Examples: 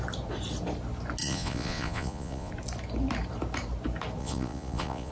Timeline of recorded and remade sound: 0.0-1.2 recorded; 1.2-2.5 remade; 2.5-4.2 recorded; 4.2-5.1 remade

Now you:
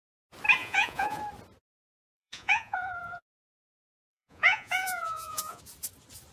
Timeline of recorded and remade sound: 0.0-0.6 recorded; 0.6-1.2 remade; 1.2-1.8 recorded; 1.8-5.6 remade; 5.6-6.3 recorded

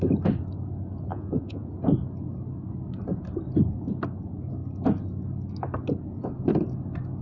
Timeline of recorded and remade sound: 0.0-1.1 recorded; 1.1-1.7 remade; 1.7-7.2 recorded

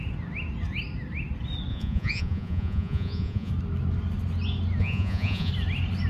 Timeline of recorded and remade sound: 0.0-1.7 recorded; 1.7-3.5 remade; 3.5-4.8 recorded; 4.8-5.5 remade; 5.5-6.1 recorded

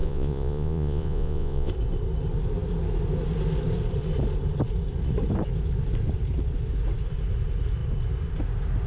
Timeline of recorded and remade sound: 0.0-1.7 remade; 1.7-8.9 recorded

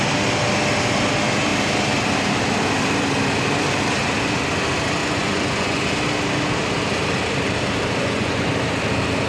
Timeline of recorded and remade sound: 0.0-5.0 recorded; 5.0-5.8 remade; 5.8-8.0 recorded; 8.0-8.5 remade; 8.5-9.3 recorded

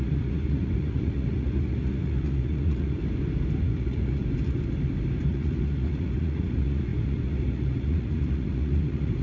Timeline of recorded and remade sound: 0.0-3.0 remade; 3.0-3.6 recorded; 3.6-4.2 remade; 4.2-5.3 recorded; 5.3-9.2 remade